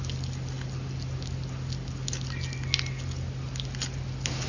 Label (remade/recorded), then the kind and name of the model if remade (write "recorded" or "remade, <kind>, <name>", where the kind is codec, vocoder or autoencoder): recorded